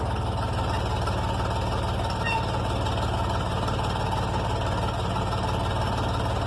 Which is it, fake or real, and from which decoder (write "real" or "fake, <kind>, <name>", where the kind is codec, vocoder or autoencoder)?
real